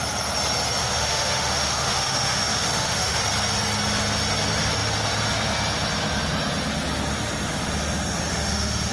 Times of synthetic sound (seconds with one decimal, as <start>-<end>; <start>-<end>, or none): 0.8-3.2; 8.3-8.9